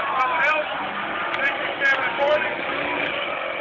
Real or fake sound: real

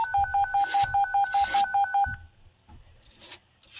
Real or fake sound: real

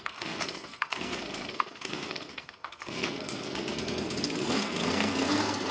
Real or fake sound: fake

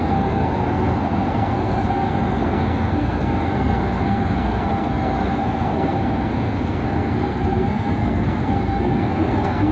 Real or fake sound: fake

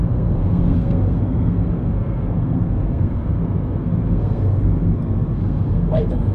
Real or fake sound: fake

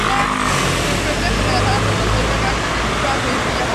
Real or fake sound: real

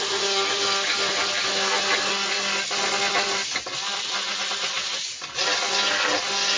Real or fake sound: real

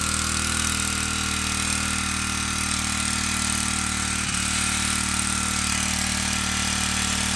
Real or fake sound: real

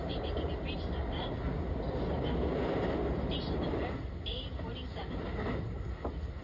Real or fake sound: real